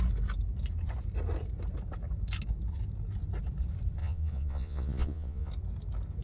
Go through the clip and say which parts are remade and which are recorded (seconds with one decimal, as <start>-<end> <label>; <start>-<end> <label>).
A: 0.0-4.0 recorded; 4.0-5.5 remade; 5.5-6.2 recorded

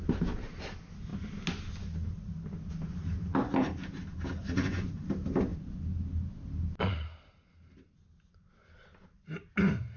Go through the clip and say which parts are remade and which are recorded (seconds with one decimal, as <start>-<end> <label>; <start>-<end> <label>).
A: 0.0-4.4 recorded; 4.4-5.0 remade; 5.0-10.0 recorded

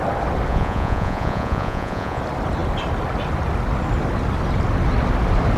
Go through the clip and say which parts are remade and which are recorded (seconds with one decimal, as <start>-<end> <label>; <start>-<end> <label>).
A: 0.0-0.5 recorded; 0.5-2.2 remade; 2.2-5.6 recorded